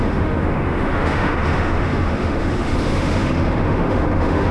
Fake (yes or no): yes